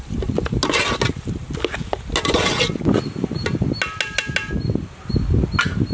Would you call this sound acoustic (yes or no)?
yes